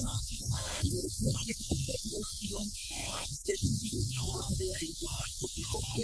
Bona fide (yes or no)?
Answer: no